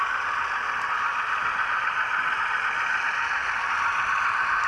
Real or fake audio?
real